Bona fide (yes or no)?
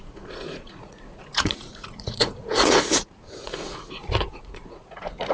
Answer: no